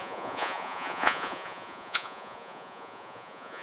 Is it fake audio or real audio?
fake